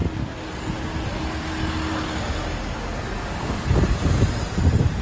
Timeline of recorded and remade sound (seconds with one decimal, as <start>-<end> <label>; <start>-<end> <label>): 0.0-5.0 recorded